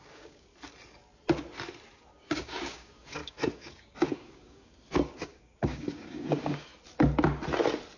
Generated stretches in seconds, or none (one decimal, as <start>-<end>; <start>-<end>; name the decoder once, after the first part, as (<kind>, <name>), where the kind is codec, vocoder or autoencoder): 0.0-0.5 (codec, DAC); 2.1-6.7